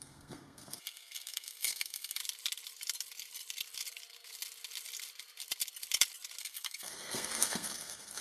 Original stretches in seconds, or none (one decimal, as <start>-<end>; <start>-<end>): 2.2-6.4